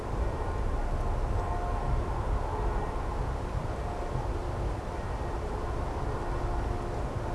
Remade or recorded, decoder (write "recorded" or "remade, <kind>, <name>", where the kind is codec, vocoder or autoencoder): recorded